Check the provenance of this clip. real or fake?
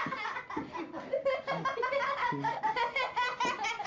real